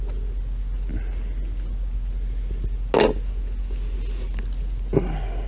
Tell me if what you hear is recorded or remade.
recorded